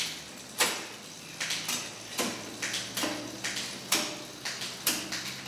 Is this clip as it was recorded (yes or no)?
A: yes